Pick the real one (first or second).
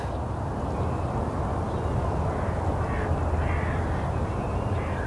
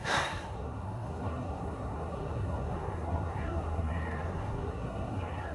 first